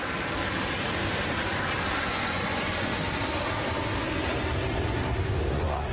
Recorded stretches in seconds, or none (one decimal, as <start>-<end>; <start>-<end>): 0.0-2.0; 2.9-5.5